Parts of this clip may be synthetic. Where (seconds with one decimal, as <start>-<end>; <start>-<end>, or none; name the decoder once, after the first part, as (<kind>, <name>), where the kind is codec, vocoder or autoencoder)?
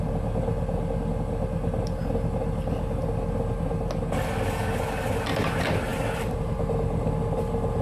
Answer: 5.9-6.6 (vocoder, BigVGAN v2)